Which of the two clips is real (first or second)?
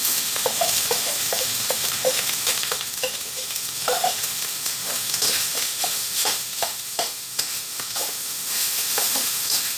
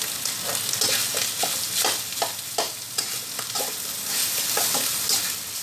second